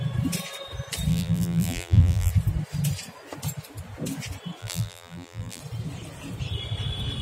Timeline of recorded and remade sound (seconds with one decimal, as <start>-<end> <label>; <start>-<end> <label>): 0.0-1.1 recorded; 1.1-2.3 remade; 2.3-4.6 recorded; 4.6-5.6 remade; 5.6-7.2 recorded